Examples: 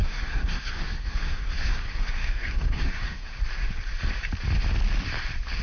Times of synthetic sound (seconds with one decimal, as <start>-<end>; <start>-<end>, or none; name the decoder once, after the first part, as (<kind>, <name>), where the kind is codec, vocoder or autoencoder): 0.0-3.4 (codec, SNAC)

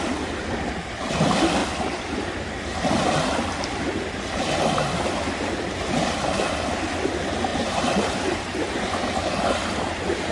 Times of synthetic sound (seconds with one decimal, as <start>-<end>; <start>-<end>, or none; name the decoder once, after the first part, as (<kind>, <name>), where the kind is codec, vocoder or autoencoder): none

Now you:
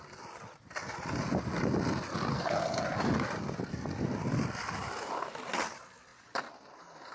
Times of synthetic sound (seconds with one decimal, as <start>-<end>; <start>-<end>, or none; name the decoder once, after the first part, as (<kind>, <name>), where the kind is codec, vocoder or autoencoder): 2.3-2.8 (codec, SNAC)

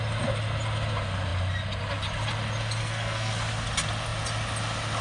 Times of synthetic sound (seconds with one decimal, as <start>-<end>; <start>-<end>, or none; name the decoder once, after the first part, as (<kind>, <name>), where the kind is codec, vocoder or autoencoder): 2.8-3.3 (codec, SNAC)

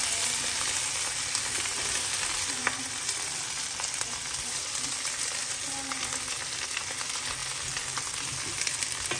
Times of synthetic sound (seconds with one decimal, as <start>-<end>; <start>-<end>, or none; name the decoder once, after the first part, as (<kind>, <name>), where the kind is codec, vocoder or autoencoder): none

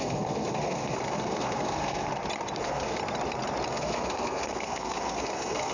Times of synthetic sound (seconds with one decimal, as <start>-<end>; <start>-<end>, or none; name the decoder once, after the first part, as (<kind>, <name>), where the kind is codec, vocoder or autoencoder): 0.0-2.1 (codec, SNAC); 2.6-3.0; 3.7-5.7